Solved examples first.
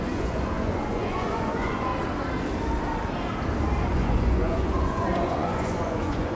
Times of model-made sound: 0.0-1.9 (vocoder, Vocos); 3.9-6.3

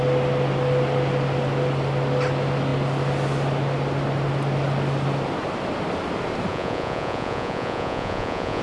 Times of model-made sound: 6.5-8.6 (vocoder, Vocos)

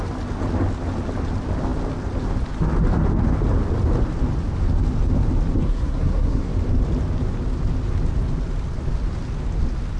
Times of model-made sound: 5.6-6.5 (codec, SNAC)

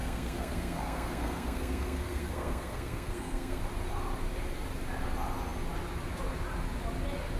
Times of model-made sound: 0.0-3.6 (codec, SNAC)

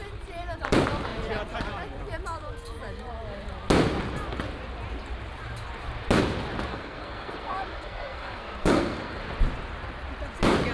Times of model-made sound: 6.7-9.2 (codec, SNAC)